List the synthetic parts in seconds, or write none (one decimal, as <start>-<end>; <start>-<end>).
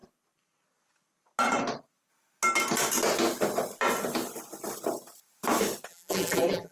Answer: 5.9-6.7